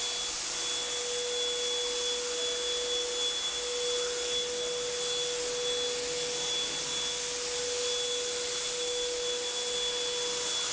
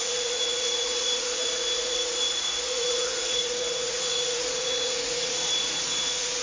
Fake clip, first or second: second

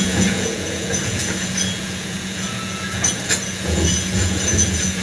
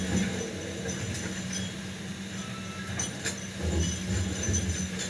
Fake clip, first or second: first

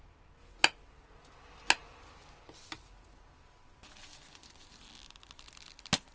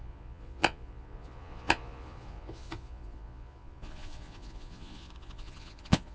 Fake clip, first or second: second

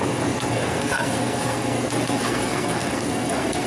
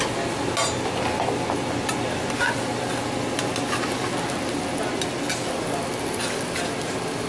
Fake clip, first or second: first